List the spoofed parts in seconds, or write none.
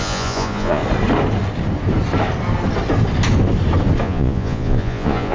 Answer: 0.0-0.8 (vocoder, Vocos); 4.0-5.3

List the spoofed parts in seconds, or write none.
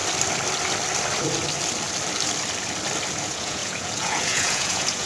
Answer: 3.1-5.1 (vocoder, Vocos)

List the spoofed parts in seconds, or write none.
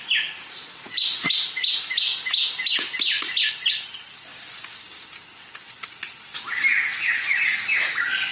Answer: 0.0-1.3 (vocoder, Vocos)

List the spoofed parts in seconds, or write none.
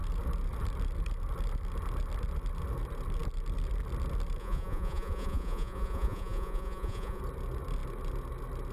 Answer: 4.4-7.2 (vocoder, Vocos)